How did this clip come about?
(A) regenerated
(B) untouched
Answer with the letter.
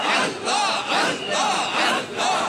B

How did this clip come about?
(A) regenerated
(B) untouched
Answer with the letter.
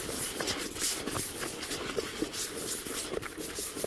B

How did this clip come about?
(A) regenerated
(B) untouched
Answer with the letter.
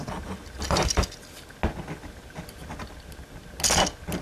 B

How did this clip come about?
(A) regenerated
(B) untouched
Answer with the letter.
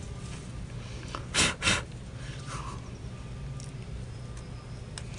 B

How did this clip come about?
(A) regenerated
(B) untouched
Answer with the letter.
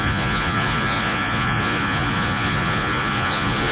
A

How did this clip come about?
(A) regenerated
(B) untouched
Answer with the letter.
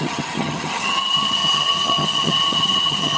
A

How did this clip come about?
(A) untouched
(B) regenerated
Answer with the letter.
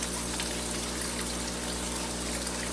A